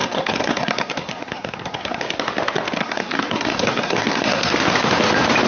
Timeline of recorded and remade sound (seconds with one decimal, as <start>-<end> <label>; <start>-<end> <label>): 0.0-2.0 remade; 2.0-2.8 recorded; 2.8-4.5 remade; 4.5-5.5 recorded